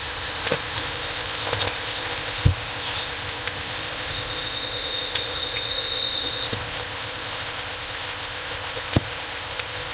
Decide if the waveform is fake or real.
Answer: fake